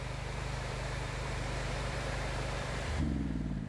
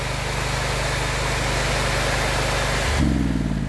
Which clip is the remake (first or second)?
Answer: first